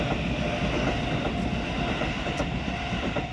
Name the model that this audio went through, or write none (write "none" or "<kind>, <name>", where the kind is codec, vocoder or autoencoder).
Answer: none